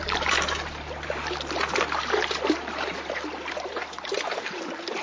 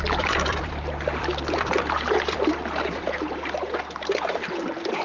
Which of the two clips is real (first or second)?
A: first